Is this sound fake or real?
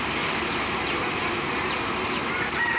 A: real